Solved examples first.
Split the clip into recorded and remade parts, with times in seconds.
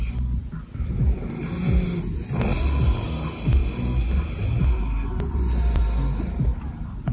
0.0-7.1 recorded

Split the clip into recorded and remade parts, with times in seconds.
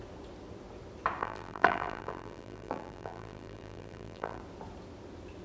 0.0-1.2 recorded; 1.2-4.4 remade; 4.4-5.4 recorded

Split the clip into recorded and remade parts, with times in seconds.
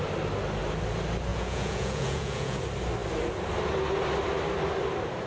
0.0-1.3 recorded; 1.3-2.6 remade; 2.6-5.3 recorded